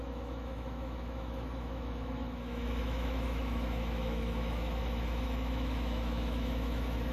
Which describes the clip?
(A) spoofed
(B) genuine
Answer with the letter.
A